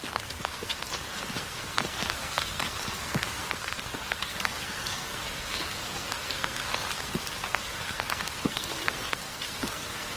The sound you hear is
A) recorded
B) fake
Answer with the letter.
B